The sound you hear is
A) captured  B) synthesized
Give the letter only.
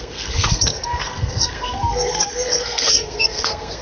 B